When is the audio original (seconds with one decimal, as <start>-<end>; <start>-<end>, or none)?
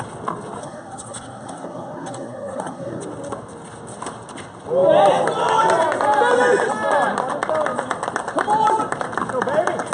0.0-0.6; 3.0-9.9